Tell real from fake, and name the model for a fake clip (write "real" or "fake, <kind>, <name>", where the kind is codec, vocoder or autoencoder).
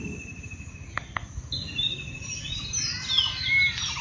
real